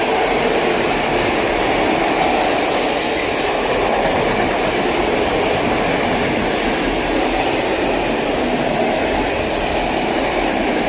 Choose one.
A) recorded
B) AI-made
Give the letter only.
A